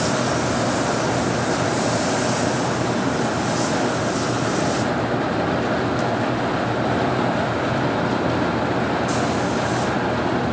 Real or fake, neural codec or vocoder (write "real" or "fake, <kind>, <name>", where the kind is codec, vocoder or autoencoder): real